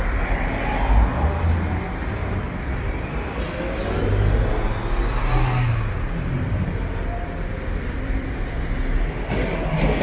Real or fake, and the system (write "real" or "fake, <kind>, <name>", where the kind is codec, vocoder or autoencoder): real